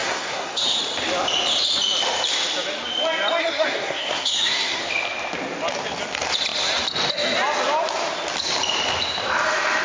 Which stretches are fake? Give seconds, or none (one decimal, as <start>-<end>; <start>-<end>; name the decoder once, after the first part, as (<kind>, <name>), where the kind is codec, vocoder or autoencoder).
0.0-0.8 (codec, SNAC); 3.4-4.8